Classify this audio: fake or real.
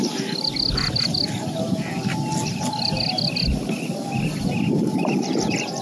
real